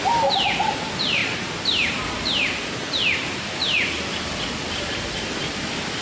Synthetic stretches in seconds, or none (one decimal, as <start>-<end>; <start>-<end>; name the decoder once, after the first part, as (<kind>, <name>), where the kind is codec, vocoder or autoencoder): none